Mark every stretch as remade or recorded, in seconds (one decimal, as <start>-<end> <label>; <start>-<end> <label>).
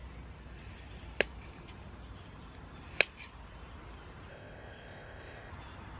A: 0.0-4.3 recorded; 4.3-5.5 remade; 5.5-6.0 recorded